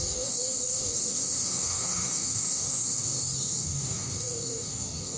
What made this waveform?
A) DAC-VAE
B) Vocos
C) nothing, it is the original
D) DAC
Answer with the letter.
D